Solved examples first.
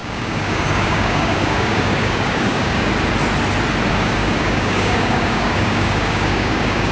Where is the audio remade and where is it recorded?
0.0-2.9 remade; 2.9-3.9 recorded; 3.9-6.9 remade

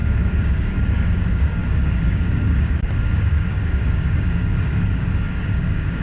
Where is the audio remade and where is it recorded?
0.0-6.0 remade

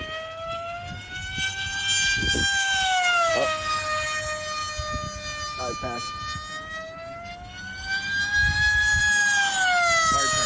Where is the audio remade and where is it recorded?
0.0-2.2 recorded; 2.2-3.3 remade; 3.3-10.5 recorded